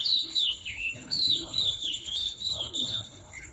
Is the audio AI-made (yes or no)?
yes